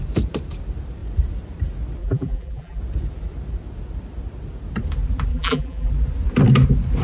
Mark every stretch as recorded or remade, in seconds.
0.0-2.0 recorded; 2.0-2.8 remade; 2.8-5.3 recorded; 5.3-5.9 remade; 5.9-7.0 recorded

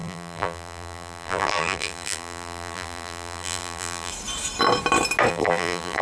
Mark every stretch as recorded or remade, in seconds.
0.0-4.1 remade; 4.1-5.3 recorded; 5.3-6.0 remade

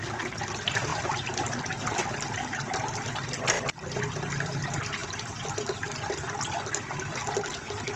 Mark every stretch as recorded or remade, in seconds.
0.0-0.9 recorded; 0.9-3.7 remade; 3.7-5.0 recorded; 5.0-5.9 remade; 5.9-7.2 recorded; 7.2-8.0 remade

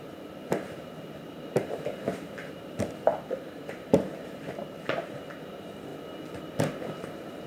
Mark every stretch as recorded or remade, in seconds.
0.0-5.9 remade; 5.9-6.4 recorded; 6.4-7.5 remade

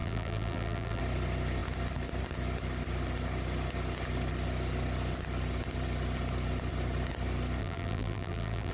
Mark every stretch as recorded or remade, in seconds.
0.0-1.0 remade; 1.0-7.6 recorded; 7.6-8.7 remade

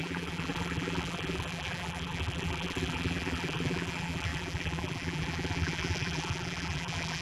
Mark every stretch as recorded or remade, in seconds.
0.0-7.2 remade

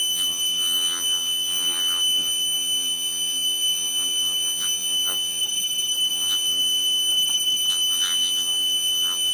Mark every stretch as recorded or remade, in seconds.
0.0-5.4 remade; 5.4-6.1 recorded; 6.1-7.1 remade; 7.1-7.7 recorded; 7.7-9.3 remade